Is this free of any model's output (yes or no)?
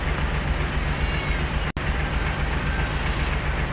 yes